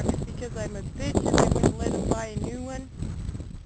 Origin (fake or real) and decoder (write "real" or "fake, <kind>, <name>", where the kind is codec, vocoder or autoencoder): real